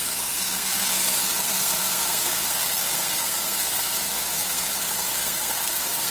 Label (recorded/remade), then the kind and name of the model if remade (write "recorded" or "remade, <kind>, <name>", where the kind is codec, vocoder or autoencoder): remade, codec, SNAC